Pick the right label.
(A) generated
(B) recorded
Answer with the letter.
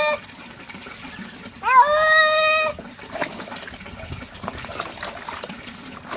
B